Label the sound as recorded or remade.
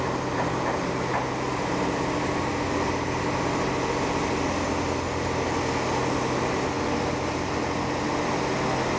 recorded